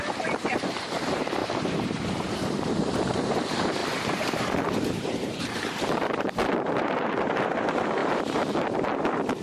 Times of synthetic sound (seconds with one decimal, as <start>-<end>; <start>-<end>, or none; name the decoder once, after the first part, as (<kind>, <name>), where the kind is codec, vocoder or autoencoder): 0.0-9.4 (vocoder, BigVGAN v2)

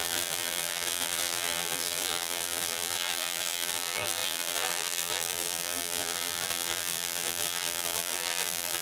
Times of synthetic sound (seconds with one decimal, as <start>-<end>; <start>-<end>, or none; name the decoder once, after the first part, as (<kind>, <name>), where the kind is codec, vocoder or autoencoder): 0.0-8.8 (vocoder, BigVGAN v2)

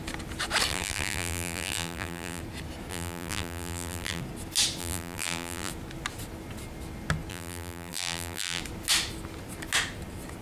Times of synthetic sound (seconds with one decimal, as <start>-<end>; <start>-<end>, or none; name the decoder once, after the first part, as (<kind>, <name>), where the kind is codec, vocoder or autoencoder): 0.7-2.4 (vocoder, BigVGAN v2); 2.9-4.2; 4.8-5.7; 7.3-8.6

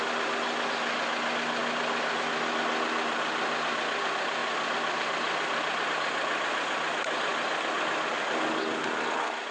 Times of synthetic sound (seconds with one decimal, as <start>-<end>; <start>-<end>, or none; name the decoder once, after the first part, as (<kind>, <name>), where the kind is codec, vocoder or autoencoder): none

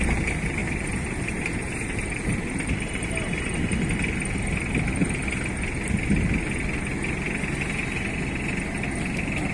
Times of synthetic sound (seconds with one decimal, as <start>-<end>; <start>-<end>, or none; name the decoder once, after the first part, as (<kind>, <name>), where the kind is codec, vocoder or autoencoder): 0.6-3.3 (vocoder, BigVGAN v2)

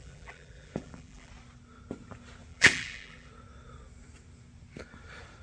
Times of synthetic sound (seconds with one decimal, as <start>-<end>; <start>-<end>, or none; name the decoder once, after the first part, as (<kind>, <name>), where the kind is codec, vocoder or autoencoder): 0.0-1.3 (vocoder, BigVGAN v2); 2.5-3.3